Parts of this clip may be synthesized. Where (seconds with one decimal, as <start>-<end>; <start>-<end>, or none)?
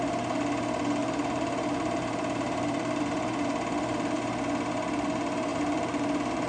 1.0-3.0; 5.5-6.0